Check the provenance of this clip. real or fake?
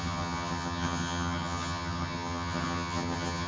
fake